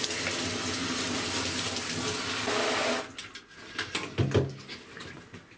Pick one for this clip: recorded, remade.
recorded